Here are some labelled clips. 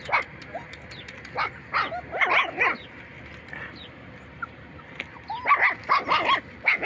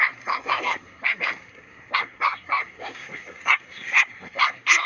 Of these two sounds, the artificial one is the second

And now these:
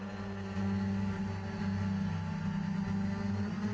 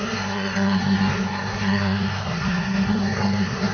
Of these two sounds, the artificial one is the second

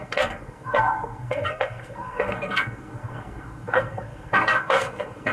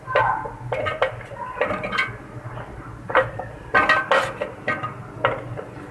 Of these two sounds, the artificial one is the first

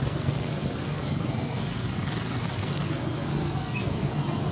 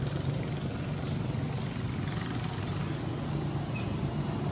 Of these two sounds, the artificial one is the first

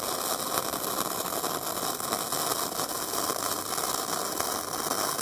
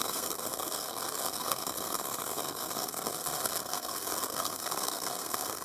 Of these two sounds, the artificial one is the second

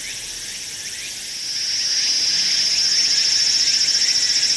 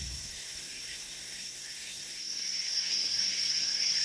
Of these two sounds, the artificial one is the second